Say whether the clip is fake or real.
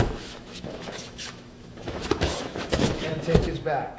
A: fake